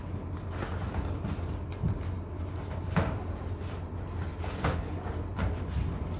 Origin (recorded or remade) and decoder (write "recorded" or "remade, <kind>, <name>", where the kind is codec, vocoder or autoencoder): recorded